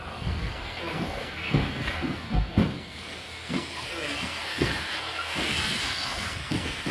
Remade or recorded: remade